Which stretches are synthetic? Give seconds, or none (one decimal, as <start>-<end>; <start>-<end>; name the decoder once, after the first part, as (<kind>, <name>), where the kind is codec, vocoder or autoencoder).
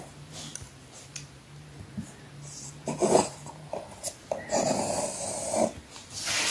none